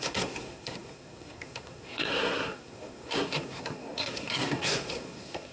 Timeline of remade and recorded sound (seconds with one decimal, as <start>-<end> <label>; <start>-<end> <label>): 0.0-5.5 remade